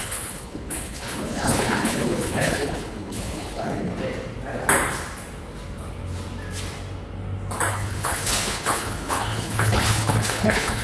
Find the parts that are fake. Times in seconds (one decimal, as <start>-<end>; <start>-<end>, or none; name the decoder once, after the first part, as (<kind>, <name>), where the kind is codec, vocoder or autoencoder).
0.0-3.9 (codec, HILCodec); 7.7-10.8